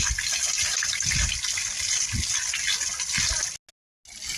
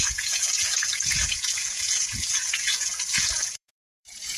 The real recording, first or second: first